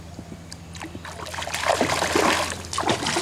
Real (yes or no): yes